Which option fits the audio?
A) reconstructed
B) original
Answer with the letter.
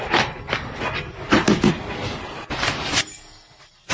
B